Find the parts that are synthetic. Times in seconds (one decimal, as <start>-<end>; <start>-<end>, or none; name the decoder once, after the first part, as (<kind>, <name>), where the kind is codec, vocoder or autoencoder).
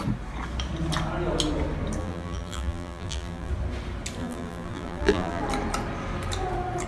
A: 2.0-3.5 (vocoder, BigVGAN v2); 4.2-5.4